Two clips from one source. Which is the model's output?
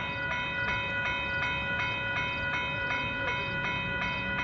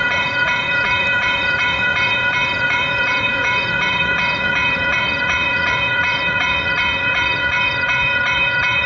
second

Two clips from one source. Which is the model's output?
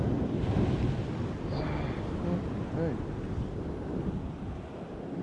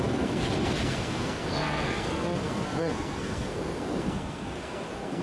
second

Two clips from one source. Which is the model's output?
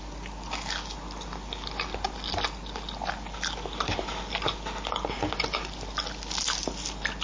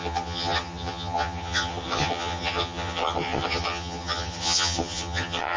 second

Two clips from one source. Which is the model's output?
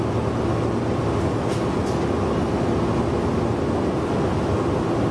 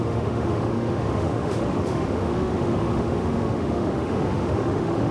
second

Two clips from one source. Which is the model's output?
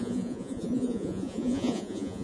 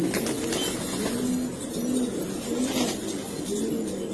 first